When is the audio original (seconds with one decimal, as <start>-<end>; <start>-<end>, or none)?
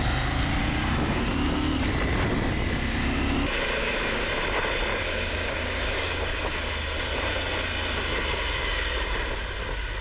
0.0-0.6; 1.2-3.8; 4.3-4.9; 6.7-10.0